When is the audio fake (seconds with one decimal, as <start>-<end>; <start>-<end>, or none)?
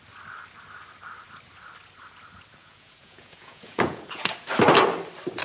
2.6-4.3